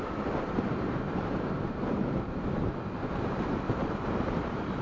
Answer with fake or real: fake